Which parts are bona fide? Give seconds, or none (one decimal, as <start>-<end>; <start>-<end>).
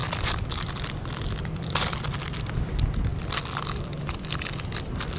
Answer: 2.7-3.1; 4.7-5.2